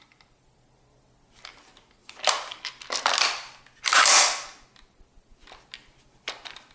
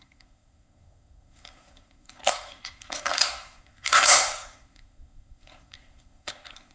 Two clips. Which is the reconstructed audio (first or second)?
second